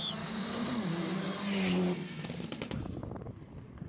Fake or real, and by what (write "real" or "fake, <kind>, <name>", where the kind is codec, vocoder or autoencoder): real